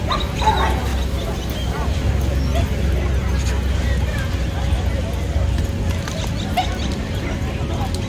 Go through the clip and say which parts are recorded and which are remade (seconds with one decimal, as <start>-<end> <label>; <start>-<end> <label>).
0.0-8.1 recorded